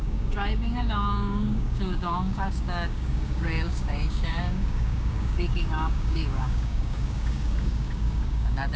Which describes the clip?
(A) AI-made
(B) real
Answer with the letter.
A